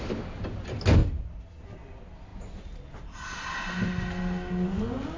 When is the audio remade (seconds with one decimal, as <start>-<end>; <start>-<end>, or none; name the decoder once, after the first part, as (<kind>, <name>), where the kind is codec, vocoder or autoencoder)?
none

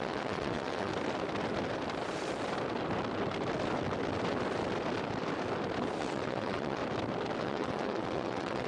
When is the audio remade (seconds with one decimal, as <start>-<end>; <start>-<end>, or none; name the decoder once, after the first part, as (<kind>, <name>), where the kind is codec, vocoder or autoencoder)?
0.0-0.9 (vocoder, WaveNeXt); 6.0-6.8; 7.4-8.7

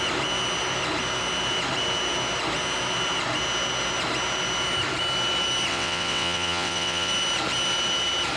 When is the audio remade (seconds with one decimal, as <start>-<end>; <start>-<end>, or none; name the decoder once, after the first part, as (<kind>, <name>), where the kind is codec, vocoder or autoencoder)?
5.7-7.1 (vocoder, WaveNeXt)

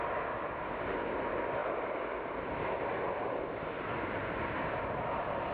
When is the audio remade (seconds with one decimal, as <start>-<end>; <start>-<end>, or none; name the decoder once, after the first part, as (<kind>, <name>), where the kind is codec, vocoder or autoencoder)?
none

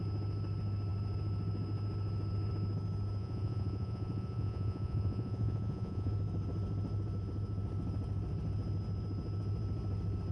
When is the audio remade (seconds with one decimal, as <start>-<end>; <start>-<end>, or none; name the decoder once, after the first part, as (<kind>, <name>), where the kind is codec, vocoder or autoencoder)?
3.2-6.1 (vocoder, Vocos)